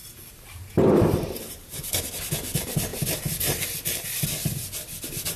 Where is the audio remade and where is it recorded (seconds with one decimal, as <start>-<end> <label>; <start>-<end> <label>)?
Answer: 0.0-1.9 remade; 1.9-5.4 recorded